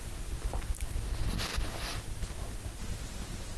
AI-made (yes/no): no